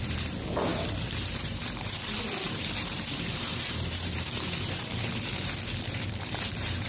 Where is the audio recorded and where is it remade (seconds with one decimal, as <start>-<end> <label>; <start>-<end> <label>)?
0.0-6.9 remade